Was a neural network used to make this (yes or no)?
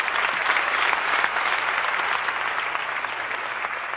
no